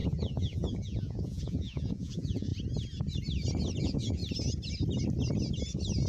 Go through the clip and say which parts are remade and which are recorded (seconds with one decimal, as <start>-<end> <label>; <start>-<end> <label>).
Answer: 0.0-2.5 remade; 2.5-3.8 recorded; 3.8-4.2 remade; 4.2-6.1 recorded